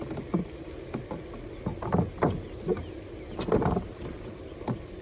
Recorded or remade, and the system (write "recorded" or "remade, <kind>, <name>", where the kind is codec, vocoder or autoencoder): recorded